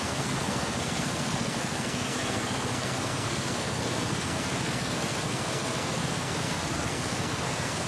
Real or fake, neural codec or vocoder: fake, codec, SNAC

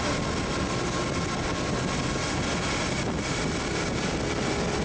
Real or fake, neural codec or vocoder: real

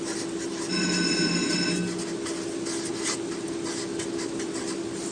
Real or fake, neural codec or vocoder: real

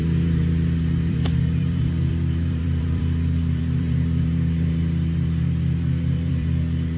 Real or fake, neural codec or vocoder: fake, vocoder, BigVGAN v2